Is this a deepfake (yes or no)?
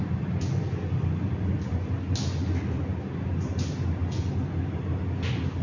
no